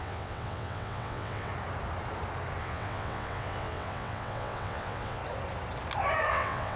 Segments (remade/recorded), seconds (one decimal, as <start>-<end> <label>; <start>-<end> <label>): 0.0-1.5 remade; 1.5-2.6 recorded; 2.6-5.2 remade; 5.2-6.3 recorded; 6.3-6.8 remade